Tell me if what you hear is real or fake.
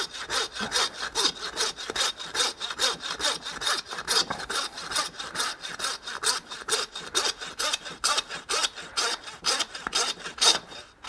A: real